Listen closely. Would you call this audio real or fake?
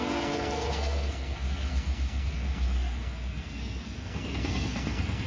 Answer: fake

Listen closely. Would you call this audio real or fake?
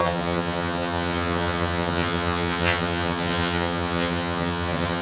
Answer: fake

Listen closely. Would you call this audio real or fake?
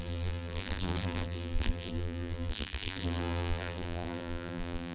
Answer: fake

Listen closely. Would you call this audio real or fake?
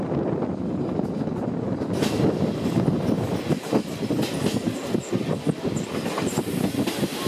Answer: real